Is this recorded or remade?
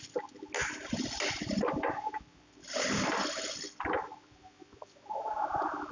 recorded